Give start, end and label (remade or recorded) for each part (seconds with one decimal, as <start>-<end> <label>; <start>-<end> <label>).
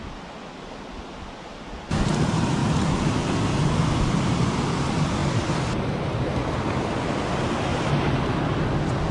0.0-2.6 recorded; 2.6-3.1 remade; 3.1-7.7 recorded; 7.7-8.4 remade; 8.4-9.1 recorded